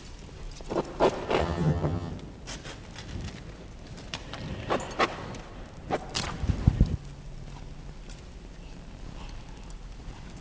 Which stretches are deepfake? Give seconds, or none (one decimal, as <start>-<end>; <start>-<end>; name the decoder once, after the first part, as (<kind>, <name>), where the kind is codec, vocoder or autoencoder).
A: 1.4-2.1 (vocoder, HiFi-GAN)